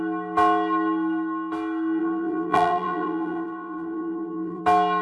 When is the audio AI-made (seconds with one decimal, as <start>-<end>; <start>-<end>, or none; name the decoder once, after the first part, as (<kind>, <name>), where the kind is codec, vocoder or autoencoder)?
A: 2.0-4.6 (vocoder, BigVGAN v2)